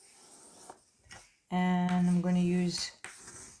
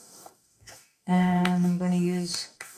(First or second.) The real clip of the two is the first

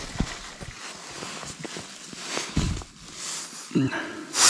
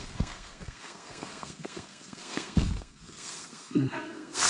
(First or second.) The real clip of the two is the first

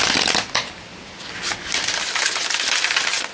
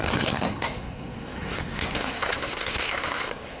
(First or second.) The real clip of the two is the first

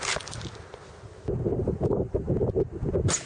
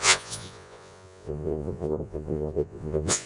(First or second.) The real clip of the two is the first